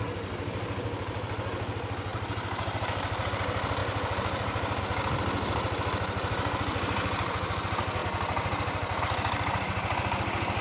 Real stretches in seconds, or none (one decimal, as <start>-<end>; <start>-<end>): 0.0-2.1; 3.3-3.8; 4.8-6.7; 7.6-10.6

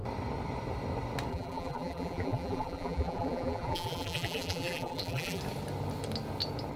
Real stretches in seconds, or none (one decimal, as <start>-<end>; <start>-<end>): 0.0-1.3; 5.4-6.8

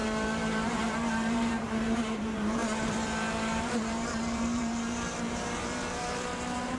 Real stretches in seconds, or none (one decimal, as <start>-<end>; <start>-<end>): none

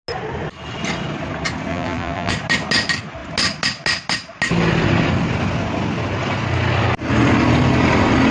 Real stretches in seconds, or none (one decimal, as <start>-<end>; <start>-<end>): 0.0-1.7; 2.3-8.3

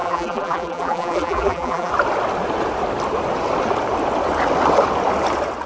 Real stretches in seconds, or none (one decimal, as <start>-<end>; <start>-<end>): 1.9-5.7